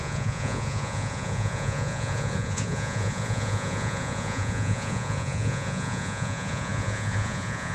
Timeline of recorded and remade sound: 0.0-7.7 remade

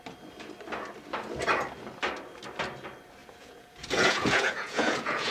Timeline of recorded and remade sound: 0.0-3.2 recorded; 3.2-5.3 remade

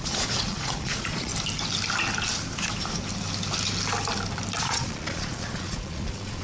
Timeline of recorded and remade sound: 0.0-1.3 remade; 1.3-4.6 recorded; 4.6-6.4 remade

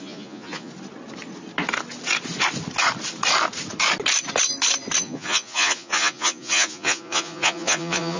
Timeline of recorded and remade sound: 0.0-0.7 remade; 0.7-5.0 recorded; 5.0-8.2 remade

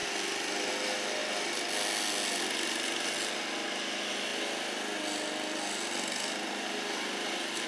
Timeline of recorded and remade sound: 0.0-7.7 recorded

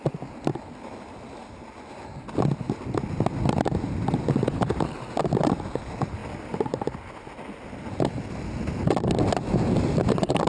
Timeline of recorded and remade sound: 0.0-10.5 recorded